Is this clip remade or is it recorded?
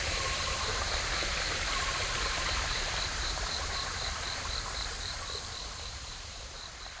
remade